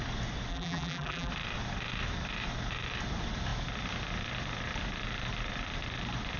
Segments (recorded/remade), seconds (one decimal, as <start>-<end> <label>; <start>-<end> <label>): 0.0-0.5 recorded; 0.5-1.3 remade; 1.3-6.4 recorded